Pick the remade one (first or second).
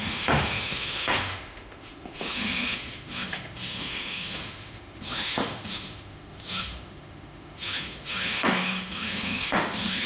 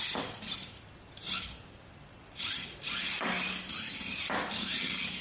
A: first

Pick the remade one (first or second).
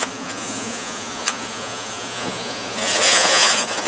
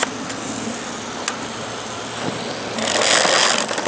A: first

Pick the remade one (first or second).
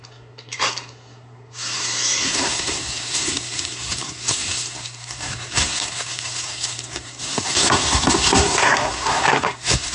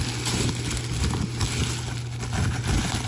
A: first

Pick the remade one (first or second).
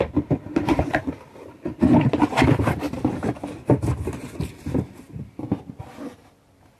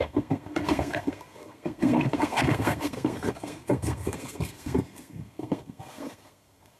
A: second